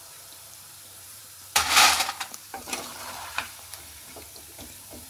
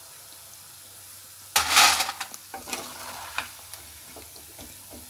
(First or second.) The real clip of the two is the second